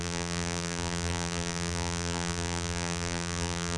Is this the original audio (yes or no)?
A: no